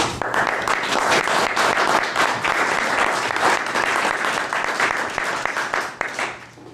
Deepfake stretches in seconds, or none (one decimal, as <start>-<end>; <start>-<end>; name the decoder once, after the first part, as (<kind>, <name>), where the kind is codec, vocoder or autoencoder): 0.0-0.5 (vocoder, BigVGAN v2); 1.1-6.7